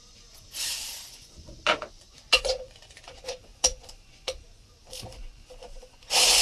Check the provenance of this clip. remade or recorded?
remade